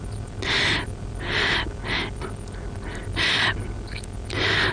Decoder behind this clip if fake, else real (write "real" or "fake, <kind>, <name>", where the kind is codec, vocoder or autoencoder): real